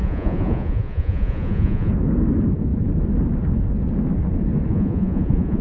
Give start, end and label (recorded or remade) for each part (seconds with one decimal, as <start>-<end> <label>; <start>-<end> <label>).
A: 0.0-1.9 remade; 1.9-4.7 recorded; 4.7-5.6 remade